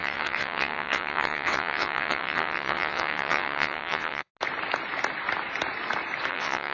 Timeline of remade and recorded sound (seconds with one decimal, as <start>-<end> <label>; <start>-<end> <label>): 0.0-4.3 remade; 4.3-6.3 recorded; 6.3-6.7 remade

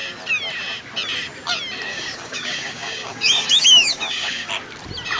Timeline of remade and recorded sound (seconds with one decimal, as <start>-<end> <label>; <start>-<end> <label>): 0.0-1.9 recorded; 1.9-4.5 remade; 4.5-5.2 recorded

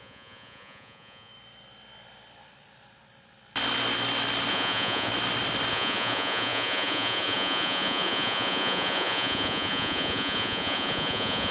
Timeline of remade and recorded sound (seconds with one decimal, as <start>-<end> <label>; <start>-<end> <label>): 0.0-1.3 remade; 1.3-4.5 recorded; 4.5-5.1 remade; 5.1-5.7 recorded; 5.7-11.5 remade

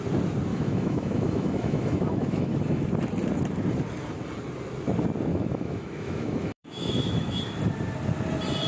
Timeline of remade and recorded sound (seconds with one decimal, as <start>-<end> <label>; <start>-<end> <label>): 0.0-0.5 recorded; 0.5-2.8 remade; 2.8-5.3 recorded; 5.3-7.4 remade; 7.4-8.7 recorded